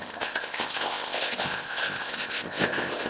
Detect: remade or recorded remade